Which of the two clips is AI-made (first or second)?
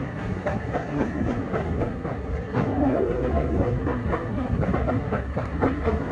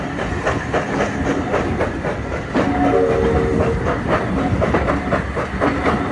first